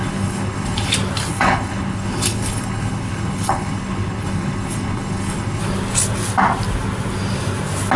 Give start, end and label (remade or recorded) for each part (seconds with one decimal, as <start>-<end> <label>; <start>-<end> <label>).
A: 0.0-0.9 remade; 0.9-1.3 recorded; 1.3-5.6 remade; 5.6-8.0 recorded